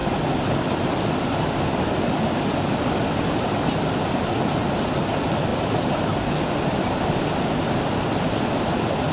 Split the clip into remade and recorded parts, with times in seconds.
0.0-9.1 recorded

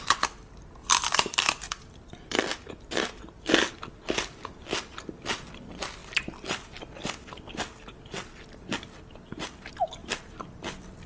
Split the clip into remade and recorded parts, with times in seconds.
0.0-0.8 recorded; 0.8-2.4 remade; 2.4-10.0 recorded; 10.0-11.1 remade

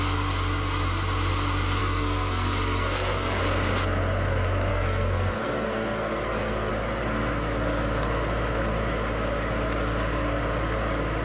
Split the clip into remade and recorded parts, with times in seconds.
0.0-1.8 recorded; 1.8-3.4 remade; 3.4-4.7 recorded; 4.7-6.7 remade; 6.7-11.2 recorded

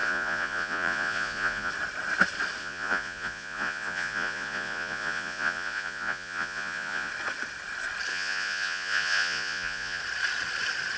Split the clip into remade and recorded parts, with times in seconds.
0.0-1.7 remade; 1.7-2.6 recorded; 2.6-7.1 remade; 7.1-8.1 recorded; 8.1-10.0 remade; 10.0-11.0 recorded

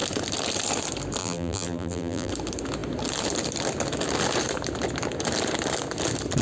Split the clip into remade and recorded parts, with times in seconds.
0.0-1.2 recorded; 1.2-2.3 remade; 2.3-6.4 recorded

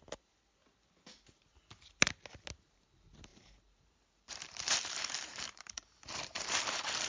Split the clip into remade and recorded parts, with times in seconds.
0.0-3.3 recorded; 3.3-7.1 remade